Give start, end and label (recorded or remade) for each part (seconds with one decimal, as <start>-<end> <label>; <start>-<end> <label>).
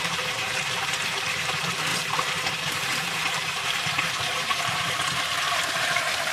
0.0-6.3 remade